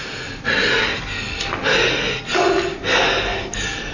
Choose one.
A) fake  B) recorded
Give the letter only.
B